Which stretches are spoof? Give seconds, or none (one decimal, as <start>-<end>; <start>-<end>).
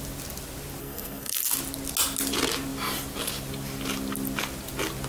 0.8-1.4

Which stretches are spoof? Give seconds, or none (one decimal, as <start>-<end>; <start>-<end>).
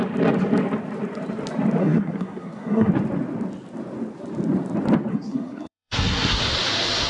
1.8-2.9; 5.1-6.4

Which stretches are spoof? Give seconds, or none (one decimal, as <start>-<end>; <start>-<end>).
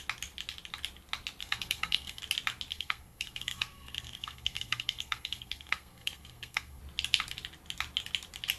1.4-2.2; 2.7-6.8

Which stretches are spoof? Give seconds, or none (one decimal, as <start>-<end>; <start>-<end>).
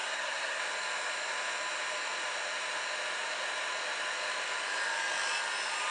0.0-0.6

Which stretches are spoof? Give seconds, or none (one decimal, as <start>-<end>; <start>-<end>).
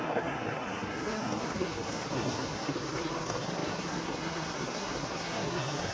0.0-5.9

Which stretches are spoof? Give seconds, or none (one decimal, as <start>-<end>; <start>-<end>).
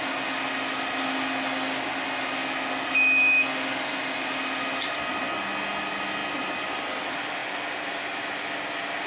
none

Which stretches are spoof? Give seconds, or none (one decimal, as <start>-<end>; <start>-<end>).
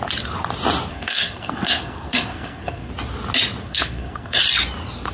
0.9-2.9; 3.6-4.4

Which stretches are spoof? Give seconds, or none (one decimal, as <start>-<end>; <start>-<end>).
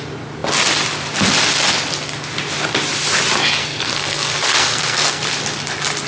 3.6-5.2